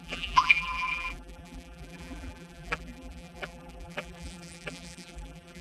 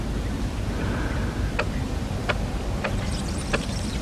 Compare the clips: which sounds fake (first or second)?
first